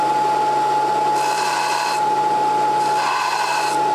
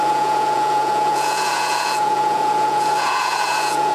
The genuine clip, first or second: first